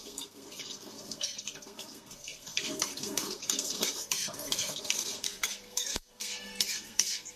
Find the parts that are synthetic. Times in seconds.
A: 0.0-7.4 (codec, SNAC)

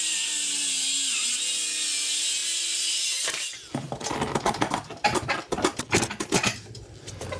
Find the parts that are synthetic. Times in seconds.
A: none

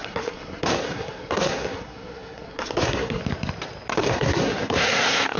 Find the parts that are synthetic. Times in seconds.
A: 0.0-3.2 (codec, SNAC); 4.0-5.4

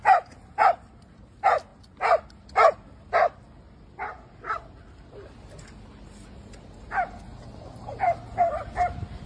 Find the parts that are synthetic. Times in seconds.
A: none

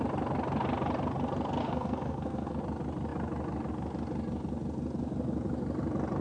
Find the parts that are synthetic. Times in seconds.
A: 1.6-2.6 (codec, SNAC)

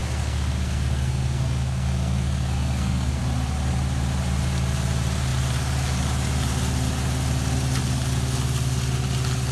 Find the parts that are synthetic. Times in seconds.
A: 0.0-3.2 (codec, SNAC)

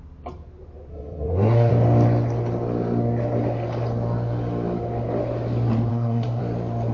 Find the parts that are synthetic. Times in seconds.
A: 0.9-1.7 (codec, SNAC); 5.9-6.4

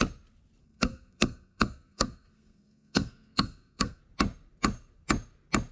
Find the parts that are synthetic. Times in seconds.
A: 0.6-4.0 (codec, SNAC)